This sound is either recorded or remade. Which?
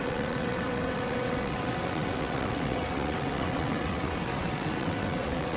remade